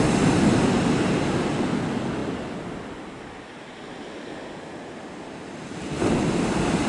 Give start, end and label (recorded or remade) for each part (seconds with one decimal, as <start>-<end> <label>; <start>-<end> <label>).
0.0-6.9 recorded